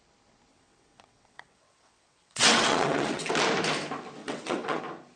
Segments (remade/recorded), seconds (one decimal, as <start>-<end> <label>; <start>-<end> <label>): 0.0-0.5 recorded; 0.5-3.3 remade; 3.3-4.2 recorded; 4.2-4.8 remade; 4.8-5.2 recorded